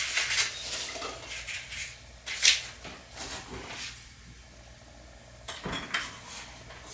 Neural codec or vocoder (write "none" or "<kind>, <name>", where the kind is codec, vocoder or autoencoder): none